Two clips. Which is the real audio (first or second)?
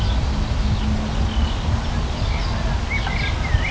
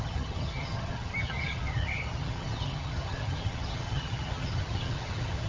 first